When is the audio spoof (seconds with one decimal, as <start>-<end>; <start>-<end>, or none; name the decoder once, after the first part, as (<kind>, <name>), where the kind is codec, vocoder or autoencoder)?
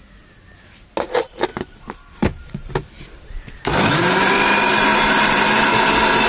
1.5-3.9 (vocoder, BigVGAN v2); 4.9-5.7